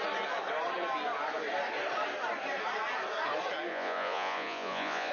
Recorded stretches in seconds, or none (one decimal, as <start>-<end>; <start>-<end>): 0.0-3.7